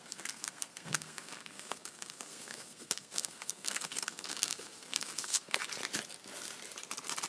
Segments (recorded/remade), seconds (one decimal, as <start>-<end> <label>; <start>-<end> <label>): 0.0-5.6 remade; 5.6-7.3 recorded